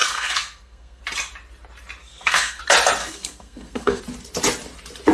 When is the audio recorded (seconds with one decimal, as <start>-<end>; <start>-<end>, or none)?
1.0-2.0; 2.6-3.0; 4.0-5.1